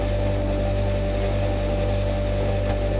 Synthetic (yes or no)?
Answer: yes